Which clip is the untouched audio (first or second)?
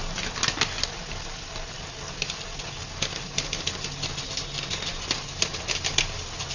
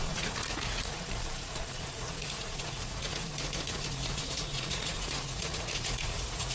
first